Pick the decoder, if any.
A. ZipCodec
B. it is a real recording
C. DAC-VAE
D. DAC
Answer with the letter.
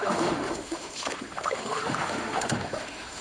C